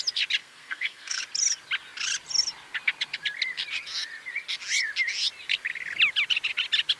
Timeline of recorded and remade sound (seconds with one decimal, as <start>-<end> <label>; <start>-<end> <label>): 0.0-0.4 recorded; 0.4-1.2 remade; 1.2-7.0 recorded